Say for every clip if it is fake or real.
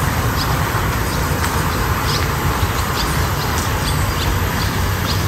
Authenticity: real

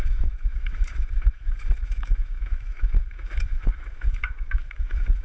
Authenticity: fake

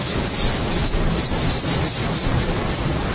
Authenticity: fake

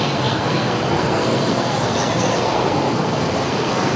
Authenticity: fake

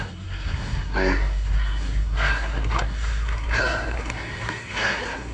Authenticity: fake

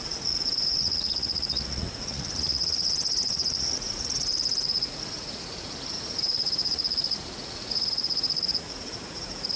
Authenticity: fake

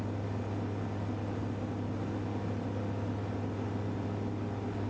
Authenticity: real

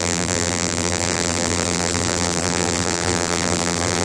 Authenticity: fake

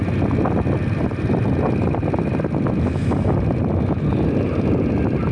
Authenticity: real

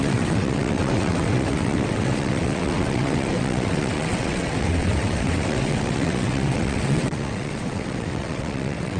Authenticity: fake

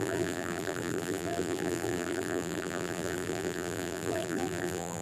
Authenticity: fake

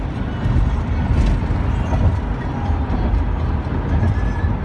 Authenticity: real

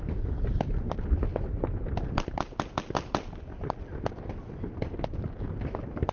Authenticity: real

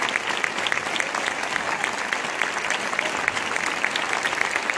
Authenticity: real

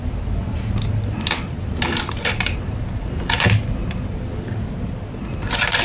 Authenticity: real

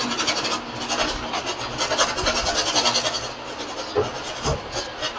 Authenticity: real